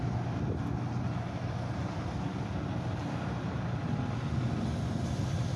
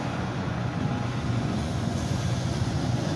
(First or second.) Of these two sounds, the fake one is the second